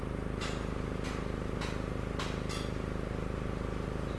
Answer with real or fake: real